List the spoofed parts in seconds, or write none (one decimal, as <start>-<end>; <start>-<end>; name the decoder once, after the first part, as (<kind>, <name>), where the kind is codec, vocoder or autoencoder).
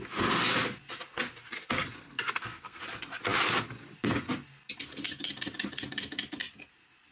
2.0-2.8 (codec, SNAC)